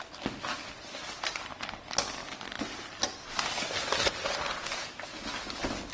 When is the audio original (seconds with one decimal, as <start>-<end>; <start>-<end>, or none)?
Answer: 0.0-5.9